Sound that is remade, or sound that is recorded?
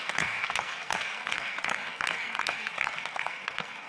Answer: remade